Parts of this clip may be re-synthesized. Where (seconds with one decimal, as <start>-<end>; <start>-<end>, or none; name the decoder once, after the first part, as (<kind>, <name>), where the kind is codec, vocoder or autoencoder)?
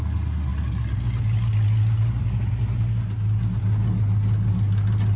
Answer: none